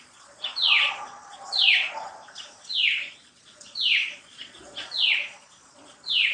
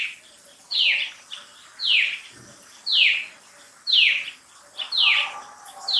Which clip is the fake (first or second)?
first